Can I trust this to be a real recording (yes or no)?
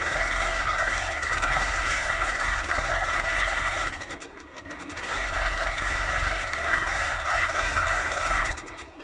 no